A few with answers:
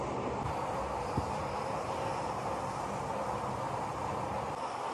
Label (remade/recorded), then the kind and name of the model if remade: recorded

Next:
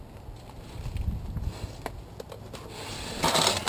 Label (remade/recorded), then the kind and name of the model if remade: recorded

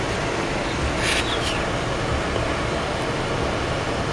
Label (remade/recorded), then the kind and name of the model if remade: recorded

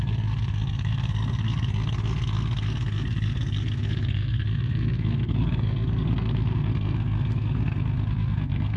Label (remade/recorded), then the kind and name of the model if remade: remade, codec, SNAC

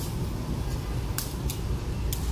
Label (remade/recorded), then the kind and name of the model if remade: recorded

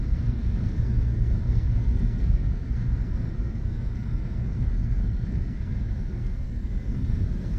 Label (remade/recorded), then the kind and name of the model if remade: remade, codec, SNAC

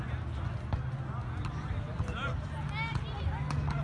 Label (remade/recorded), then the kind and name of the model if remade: recorded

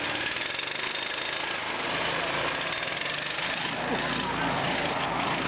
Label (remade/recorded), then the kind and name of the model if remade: recorded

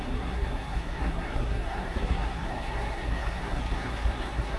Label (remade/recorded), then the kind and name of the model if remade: remade, codec, SNAC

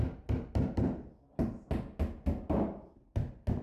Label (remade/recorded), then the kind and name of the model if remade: recorded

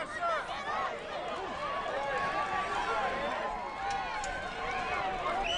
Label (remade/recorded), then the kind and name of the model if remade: recorded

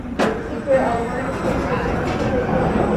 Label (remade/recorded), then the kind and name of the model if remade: recorded